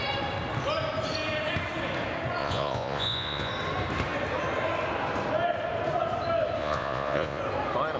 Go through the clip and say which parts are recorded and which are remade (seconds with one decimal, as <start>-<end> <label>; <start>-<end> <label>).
0.0-2.4 recorded; 2.4-3.5 remade; 3.5-6.6 recorded; 6.6-7.4 remade; 7.4-8.0 recorded

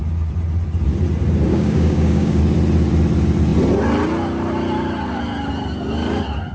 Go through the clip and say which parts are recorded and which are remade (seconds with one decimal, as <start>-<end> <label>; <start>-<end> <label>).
0.0-1.5 recorded; 1.5-2.4 remade; 2.4-6.5 recorded

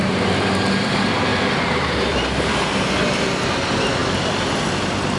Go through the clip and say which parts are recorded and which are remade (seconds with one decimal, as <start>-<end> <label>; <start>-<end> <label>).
0.0-1.3 recorded; 1.3-2.6 remade; 2.6-5.2 recorded

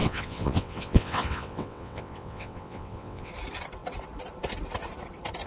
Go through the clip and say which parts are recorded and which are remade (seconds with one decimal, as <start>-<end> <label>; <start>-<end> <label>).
0.0-3.3 remade; 3.3-5.5 recorded

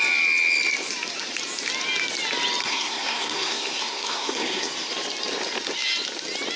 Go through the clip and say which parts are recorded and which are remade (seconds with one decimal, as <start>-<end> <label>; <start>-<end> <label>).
0.0-2.6 recorded; 2.6-4.9 remade; 4.9-6.6 recorded

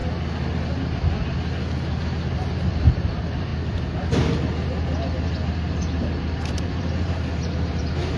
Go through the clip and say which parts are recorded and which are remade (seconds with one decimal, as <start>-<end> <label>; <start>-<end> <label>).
0.0-2.8 recorded; 2.8-3.5 remade; 3.5-6.4 recorded; 6.4-8.2 remade